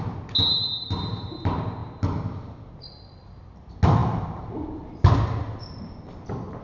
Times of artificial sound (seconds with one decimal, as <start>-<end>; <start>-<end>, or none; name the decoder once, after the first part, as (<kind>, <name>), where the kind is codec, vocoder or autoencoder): none